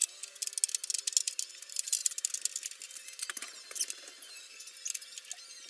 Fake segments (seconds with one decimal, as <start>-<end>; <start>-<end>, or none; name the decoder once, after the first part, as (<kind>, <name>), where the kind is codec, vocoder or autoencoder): none